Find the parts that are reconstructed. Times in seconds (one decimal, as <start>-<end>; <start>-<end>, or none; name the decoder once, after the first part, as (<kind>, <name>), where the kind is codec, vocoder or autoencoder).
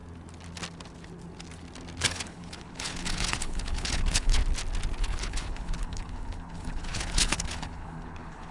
2.0-4.4 (codec, HILCodec); 5.0-8.5